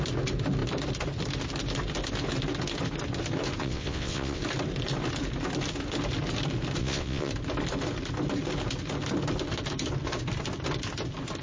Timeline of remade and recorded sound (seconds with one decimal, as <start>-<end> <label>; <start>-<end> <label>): 0.0-3.6 recorded; 3.6-4.4 remade; 4.4-6.8 recorded; 6.8-7.3 remade; 7.3-11.4 recorded